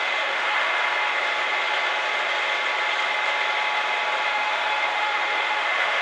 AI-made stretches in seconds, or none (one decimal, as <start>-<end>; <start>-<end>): 0.0-0.7; 4.3-6.0